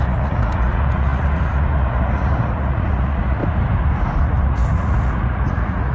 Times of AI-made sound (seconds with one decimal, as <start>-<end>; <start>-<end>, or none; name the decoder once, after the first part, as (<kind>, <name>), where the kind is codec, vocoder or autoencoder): 0.0-3.4 (vocoder, Vocos); 4.2-5.9